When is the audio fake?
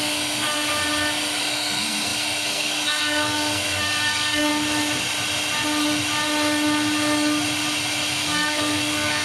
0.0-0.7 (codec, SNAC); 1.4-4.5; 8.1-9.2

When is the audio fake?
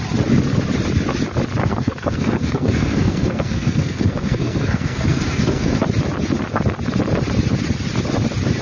1.6-5.8 (codec, SNAC)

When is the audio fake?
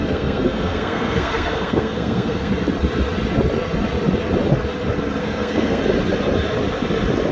0.0-2.5 (codec, SNAC); 5.2-5.8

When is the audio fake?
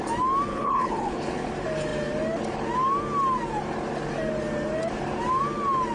0.5-1.5 (codec, HILCodec)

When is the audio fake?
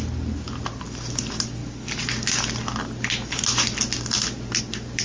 none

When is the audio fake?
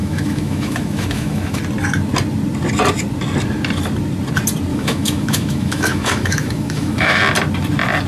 0.0-1.6 (autoencoder, DAC-VAE); 4.7-7.2